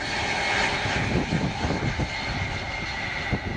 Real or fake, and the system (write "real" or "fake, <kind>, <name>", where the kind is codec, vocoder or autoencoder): real